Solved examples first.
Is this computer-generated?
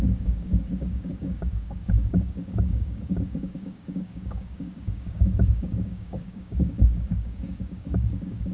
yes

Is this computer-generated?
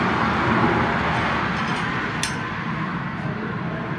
no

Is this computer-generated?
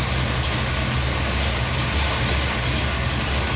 no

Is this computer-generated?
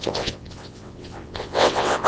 yes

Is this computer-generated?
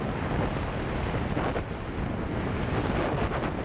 no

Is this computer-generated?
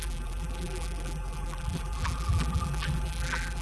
yes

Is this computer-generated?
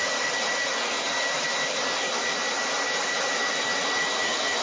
no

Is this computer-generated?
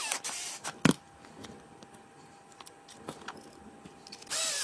no